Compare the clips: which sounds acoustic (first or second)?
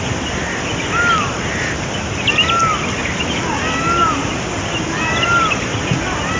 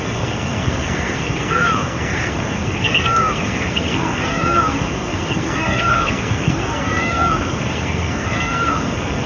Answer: first